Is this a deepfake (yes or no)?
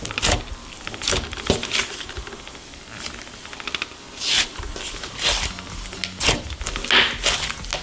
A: no